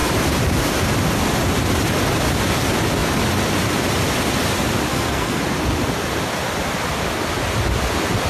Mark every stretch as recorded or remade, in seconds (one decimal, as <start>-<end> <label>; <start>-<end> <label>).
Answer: 0.0-4.9 recorded; 4.9-5.4 remade; 5.4-8.3 recorded